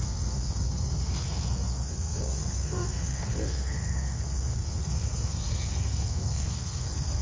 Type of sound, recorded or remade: remade